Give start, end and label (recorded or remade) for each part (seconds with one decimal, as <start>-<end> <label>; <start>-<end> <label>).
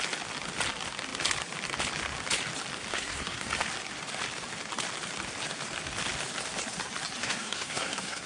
0.0-2.9 recorded; 2.9-3.5 remade; 3.5-7.2 recorded; 7.2-8.3 remade